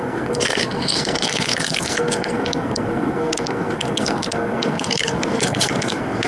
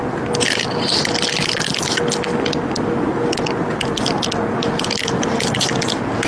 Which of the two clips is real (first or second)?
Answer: second